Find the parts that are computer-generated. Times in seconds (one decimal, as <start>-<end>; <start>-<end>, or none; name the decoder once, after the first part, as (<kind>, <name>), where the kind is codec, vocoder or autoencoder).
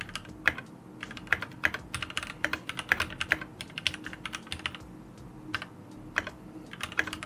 none